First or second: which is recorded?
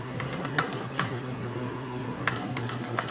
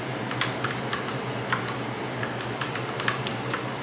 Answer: second